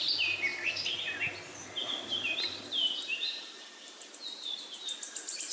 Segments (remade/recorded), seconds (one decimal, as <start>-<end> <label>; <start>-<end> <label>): 0.0-1.8 recorded; 1.8-4.1 remade; 4.1-5.5 recorded